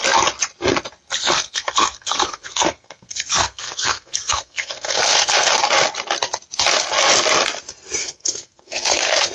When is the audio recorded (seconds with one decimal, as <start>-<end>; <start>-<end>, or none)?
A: 0.0-1.2; 5.6-8.0